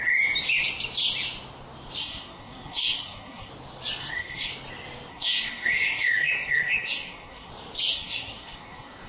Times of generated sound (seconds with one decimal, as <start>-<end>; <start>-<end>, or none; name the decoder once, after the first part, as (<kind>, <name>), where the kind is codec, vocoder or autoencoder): 2.0-3.5 (codec, SNAC); 4.0-4.5; 5.1-7.5; 7.9-9.1